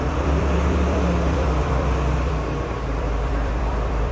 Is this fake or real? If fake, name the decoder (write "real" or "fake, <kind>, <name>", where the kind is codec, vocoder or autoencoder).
fake, vocoder, BigVGAN v2